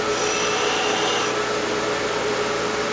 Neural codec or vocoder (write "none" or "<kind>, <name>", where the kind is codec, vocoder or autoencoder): none